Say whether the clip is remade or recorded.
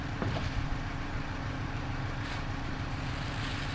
remade